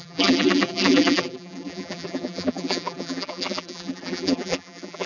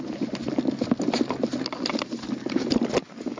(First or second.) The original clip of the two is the second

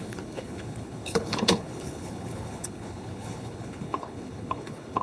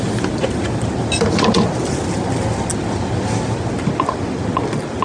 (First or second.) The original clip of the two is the second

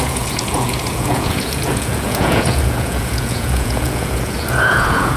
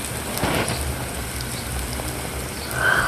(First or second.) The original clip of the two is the second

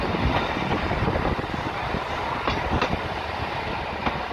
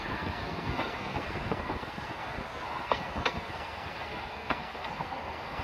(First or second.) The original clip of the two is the first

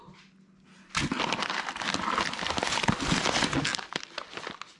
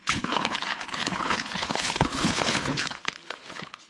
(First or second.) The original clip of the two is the first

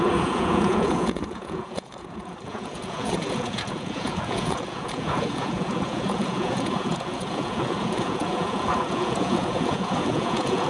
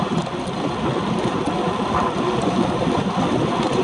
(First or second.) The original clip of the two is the second